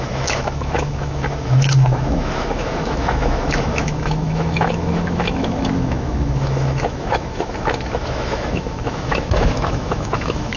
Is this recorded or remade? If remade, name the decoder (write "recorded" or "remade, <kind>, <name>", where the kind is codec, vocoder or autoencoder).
remade, autoencoder, DAC-VAE